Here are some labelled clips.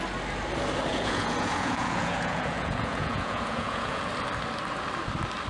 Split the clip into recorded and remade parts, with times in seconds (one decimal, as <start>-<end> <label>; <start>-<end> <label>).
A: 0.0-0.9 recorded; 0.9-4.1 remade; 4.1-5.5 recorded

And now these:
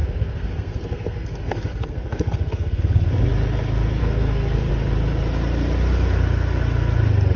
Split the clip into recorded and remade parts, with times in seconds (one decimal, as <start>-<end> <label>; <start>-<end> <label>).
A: 0.0-3.1 remade; 3.1-4.0 recorded; 4.0-4.7 remade; 4.7-7.4 recorded

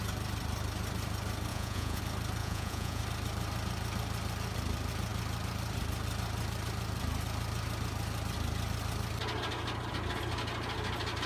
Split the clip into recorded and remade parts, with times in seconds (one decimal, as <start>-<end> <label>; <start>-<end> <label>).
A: 0.0-1.5 recorded; 1.5-2.0 remade; 2.0-2.4 recorded; 2.4-3.0 remade; 3.0-11.3 recorded

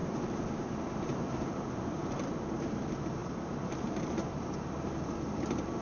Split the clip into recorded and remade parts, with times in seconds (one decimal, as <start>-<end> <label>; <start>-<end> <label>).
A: 0.0-2.3 remade; 2.3-3.2 recorded; 3.2-5.0 remade; 5.0-5.8 recorded

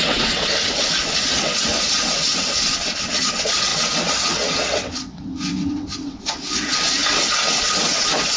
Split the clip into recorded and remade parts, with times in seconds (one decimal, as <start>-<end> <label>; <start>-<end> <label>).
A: 0.0-8.4 remade

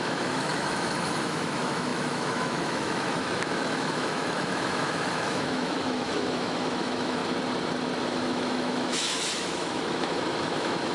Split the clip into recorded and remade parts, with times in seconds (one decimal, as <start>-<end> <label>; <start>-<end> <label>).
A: 0.0-7.2 remade; 7.2-8.0 recorded; 8.0-10.9 remade

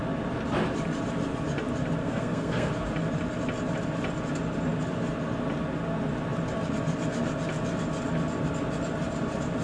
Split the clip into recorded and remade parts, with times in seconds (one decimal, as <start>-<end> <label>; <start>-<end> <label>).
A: 0.0-2.0 recorded; 2.0-2.7 remade; 2.7-9.6 recorded